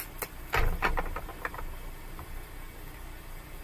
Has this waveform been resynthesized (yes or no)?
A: no